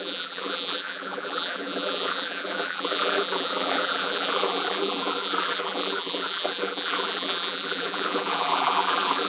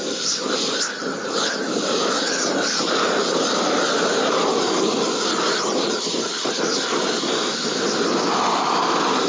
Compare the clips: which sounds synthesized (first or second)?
first